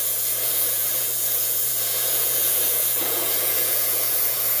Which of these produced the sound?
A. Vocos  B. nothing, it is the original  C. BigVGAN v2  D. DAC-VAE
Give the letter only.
A